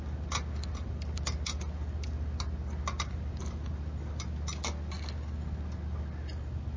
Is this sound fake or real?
real